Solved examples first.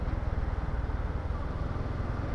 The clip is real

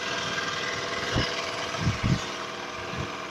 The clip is real